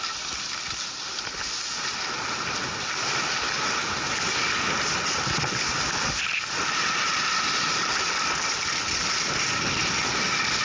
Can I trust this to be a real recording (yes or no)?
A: yes